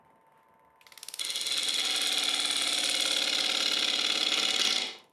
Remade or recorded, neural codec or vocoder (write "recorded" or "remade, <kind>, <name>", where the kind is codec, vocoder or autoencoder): recorded